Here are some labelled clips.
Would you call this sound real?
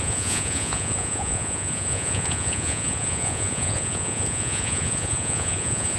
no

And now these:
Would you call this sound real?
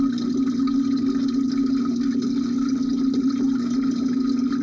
yes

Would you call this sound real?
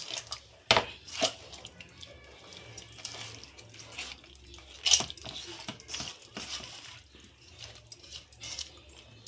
yes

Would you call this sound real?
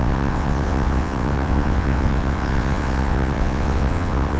no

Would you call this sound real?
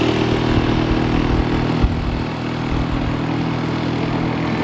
yes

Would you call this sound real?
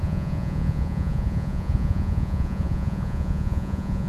no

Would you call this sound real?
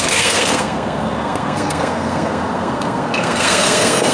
no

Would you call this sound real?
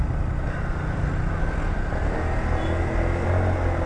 yes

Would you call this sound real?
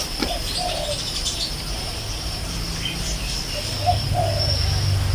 yes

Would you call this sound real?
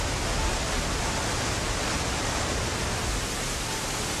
yes